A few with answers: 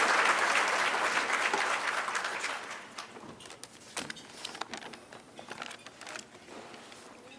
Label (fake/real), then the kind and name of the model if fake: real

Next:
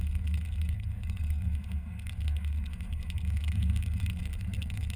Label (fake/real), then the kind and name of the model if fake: fake, codec, SNAC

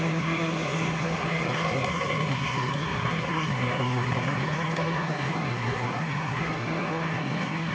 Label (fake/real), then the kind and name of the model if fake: fake, codec, SNAC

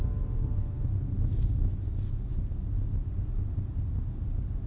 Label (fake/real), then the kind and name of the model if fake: real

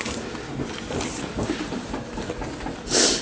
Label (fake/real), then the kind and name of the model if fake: real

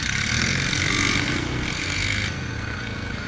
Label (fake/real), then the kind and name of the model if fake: fake, codec, SNAC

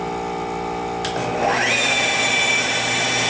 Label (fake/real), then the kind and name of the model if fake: real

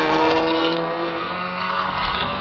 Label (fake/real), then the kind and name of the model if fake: fake, codec, SNAC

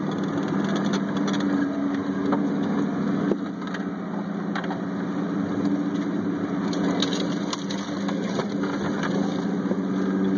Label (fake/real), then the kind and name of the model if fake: real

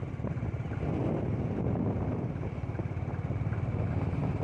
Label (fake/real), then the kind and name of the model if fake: real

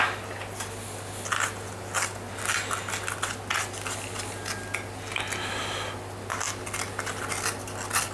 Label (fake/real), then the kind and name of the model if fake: real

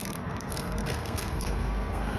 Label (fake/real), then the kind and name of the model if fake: fake, codec, SNAC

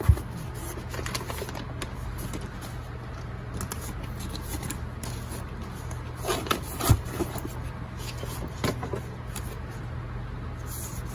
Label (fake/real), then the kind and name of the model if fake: real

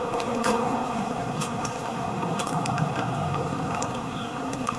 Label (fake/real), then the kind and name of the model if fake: fake, codec, SNAC